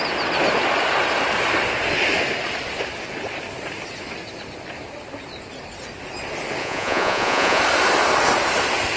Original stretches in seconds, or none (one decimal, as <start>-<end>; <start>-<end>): 0.0-6.6; 7.6-9.0